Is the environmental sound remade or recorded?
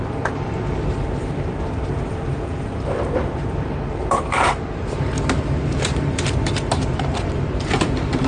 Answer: remade